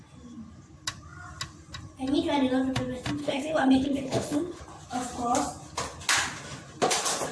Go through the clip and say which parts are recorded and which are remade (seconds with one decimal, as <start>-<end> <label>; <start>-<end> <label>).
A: 0.0-3.2 recorded; 3.2-4.6 remade; 4.6-7.3 recorded